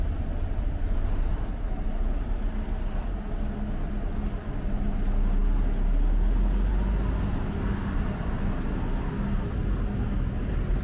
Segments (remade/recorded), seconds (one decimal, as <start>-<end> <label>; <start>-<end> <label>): 0.0-10.8 recorded